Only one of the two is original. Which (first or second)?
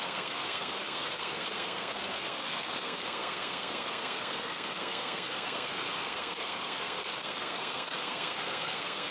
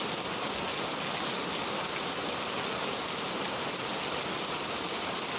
second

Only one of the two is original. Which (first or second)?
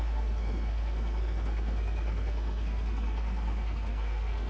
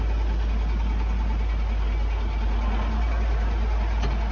second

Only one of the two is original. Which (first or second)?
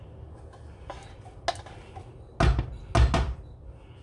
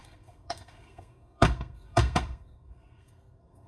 first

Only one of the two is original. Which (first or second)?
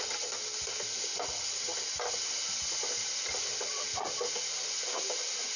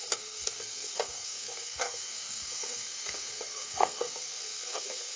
first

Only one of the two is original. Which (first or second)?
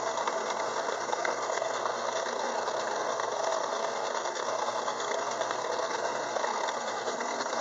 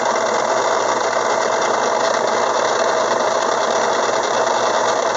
second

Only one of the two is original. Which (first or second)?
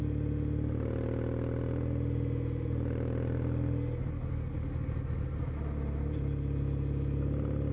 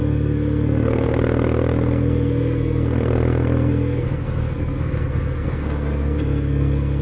first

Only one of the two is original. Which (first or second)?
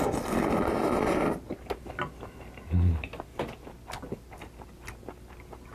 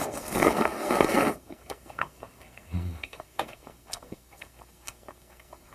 first